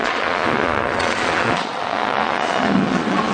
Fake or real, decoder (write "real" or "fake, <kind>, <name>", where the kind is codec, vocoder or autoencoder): fake, vocoder, Vocos